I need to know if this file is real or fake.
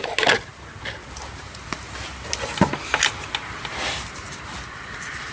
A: real